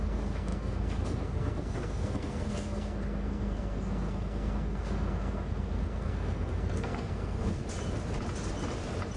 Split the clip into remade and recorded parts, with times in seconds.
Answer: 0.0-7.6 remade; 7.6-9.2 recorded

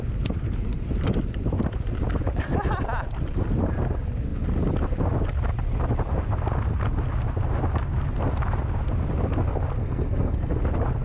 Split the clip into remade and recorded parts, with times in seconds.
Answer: 0.0-9.8 recorded; 9.8-10.6 remade; 10.6-11.0 recorded